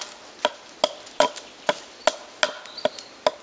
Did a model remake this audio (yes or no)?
no